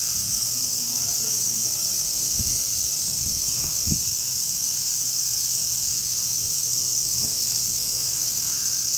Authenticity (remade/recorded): remade